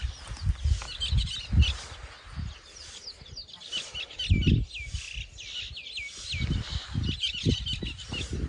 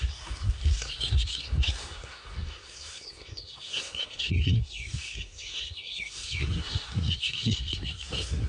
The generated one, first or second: second